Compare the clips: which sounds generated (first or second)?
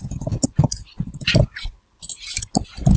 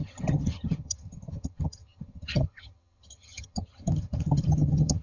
second